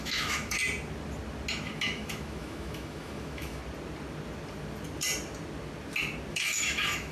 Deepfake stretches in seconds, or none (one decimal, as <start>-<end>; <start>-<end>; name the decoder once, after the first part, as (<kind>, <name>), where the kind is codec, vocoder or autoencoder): 0.0-0.6 (autoencoder, DAC-VAE); 1.5-3.6; 6.3-7.1